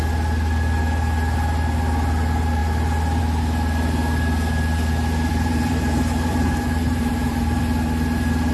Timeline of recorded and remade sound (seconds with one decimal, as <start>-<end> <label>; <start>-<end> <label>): 0.0-5.3 recorded; 5.3-7.6 remade; 7.6-8.5 recorded